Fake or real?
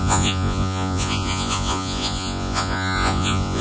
fake